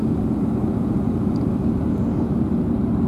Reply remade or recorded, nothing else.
remade